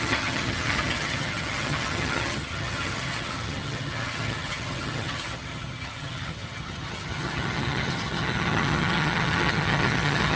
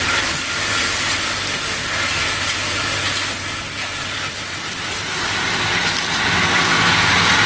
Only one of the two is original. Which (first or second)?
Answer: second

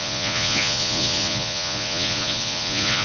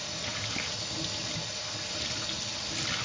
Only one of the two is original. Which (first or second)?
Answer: second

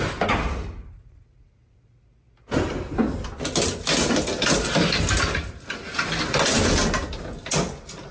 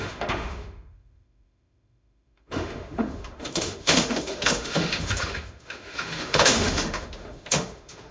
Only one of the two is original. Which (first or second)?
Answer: first